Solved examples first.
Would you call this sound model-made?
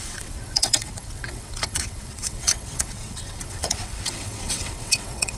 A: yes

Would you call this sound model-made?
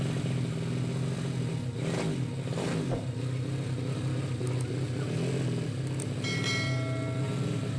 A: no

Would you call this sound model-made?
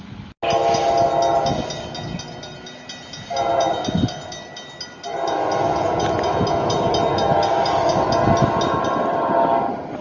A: no